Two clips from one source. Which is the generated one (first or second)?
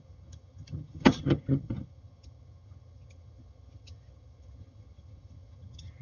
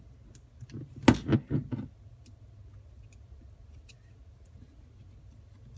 first